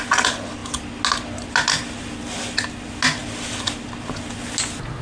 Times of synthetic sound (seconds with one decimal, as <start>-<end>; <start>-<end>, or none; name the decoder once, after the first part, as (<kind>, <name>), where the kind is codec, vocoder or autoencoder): none